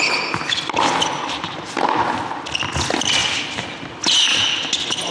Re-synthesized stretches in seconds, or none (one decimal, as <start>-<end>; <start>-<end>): none